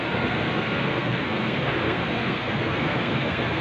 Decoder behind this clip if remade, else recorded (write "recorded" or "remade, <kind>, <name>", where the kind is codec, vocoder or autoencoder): remade, codec, SNAC